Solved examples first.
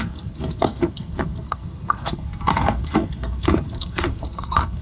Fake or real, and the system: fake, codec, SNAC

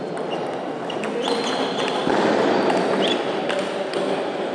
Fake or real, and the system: real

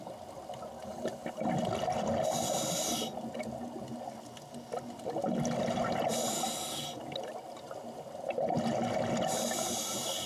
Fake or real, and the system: real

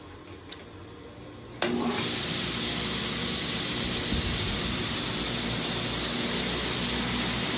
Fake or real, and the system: real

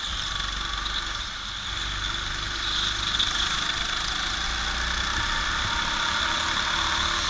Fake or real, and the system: real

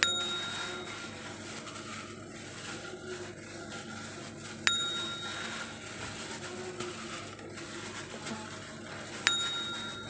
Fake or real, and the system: real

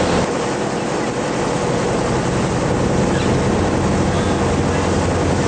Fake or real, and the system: fake, vocoder, BigVGAN v2